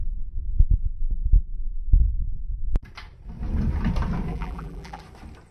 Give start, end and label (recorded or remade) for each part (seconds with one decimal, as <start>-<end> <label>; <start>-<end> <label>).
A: 0.0-4.3 recorded; 4.3-5.0 remade; 5.0-5.5 recorded